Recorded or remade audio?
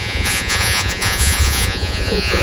remade